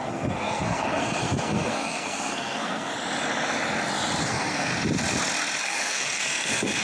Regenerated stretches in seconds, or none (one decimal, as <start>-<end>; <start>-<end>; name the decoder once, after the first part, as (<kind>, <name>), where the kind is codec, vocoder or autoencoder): 0.0-2.9 (codec, SNAC); 4.2-4.7; 5.6-6.8